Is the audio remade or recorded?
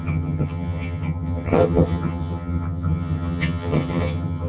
remade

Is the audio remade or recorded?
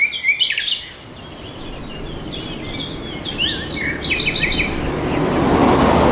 recorded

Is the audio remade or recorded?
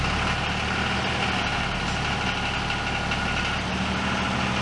recorded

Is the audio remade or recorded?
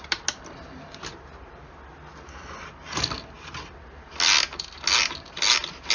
recorded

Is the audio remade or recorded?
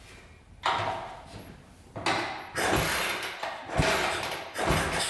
recorded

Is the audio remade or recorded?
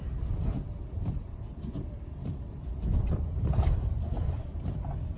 remade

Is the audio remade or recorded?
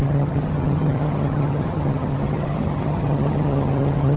remade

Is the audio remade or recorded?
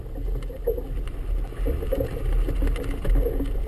recorded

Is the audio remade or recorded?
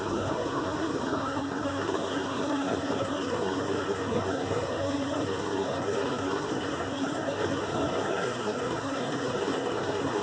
remade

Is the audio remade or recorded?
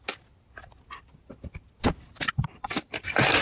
recorded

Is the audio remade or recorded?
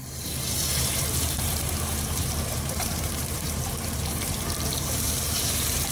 remade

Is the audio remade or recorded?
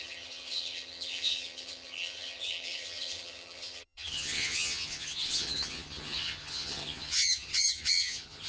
remade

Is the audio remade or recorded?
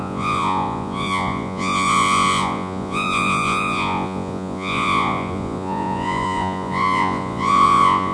remade